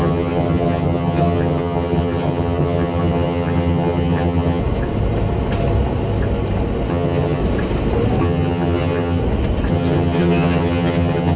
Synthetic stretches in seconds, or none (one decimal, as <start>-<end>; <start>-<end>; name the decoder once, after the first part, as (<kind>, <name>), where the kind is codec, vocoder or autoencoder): 0.0-4.6 (vocoder, HiFi-GAN); 6.9-7.4; 8.2-9.2; 9.7-11.4